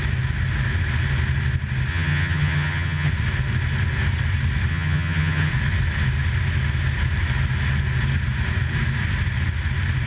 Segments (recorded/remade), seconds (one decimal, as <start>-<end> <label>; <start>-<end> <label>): 0.0-1.9 recorded; 1.9-3.1 remade; 3.1-4.7 recorded; 4.7-5.5 remade; 5.5-10.1 recorded